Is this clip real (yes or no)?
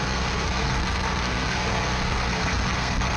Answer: no